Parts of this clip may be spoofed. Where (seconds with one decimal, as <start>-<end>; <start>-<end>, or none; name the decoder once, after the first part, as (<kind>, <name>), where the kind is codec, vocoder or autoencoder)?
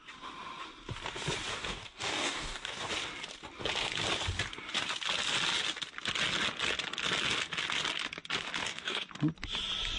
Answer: 1.5-2.9 (codec, DAC); 8.6-9.1